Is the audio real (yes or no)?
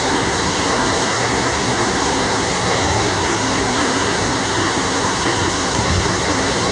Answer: no